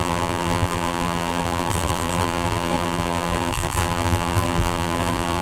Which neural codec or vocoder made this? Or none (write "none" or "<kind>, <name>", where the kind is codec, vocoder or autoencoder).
vocoder, BigVGAN v2